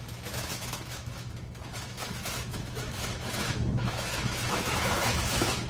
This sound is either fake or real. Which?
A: fake